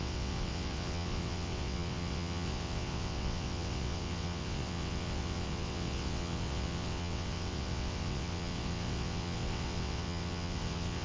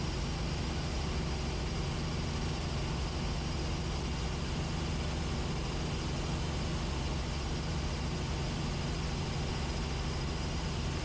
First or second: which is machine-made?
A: first